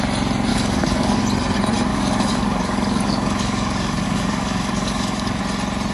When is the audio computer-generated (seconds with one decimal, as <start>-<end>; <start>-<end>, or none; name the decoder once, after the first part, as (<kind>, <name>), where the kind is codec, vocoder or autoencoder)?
0.5-1.2 (codec, DAC); 1.9-5.4